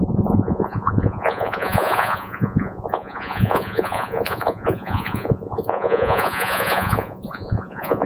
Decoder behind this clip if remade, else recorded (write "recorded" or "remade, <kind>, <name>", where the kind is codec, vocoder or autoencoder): remade, vocoder, Vocos